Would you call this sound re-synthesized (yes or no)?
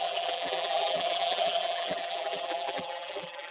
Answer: yes